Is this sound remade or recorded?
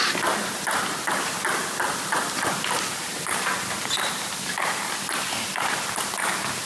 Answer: recorded